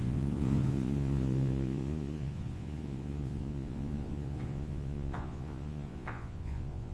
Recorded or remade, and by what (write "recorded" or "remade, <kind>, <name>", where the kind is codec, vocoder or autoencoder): remade, vocoder, Vocos